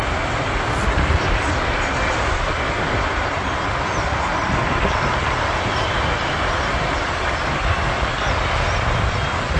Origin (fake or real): real